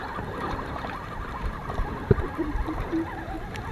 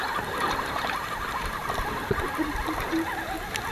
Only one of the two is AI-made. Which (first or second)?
first